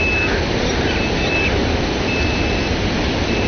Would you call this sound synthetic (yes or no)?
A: no